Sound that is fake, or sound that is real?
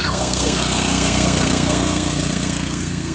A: fake